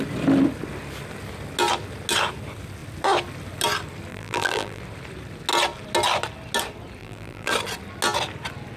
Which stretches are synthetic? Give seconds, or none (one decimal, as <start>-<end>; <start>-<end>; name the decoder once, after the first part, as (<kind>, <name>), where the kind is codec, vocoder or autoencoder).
4.1-4.8 (vocoder, BigVGAN v2); 7.0-7.5